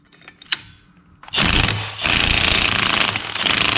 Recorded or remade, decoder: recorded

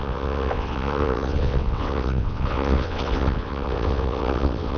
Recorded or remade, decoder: remade, vocoder, WaveNeXt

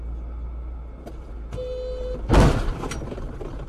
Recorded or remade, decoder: recorded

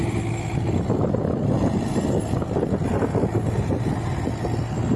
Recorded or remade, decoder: recorded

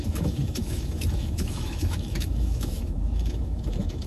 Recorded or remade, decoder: remade, autoencoder, DAC-VAE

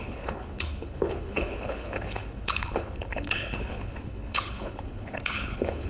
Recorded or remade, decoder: remade, codec, HILCodec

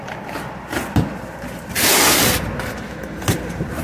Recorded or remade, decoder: recorded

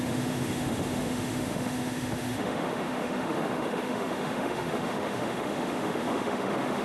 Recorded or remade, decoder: remade, autoencoder, DAC-VAE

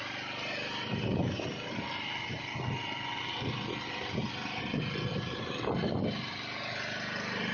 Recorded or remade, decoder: recorded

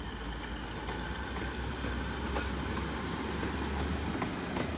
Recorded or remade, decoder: recorded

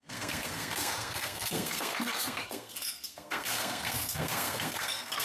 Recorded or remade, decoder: remade, codec, SNAC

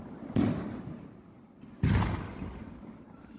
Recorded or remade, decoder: recorded